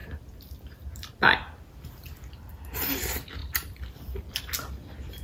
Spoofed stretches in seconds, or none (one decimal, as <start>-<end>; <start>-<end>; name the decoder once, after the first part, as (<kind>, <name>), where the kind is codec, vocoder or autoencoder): 0.0-2.5 (vocoder, BigVGAN v2); 3.4-4.4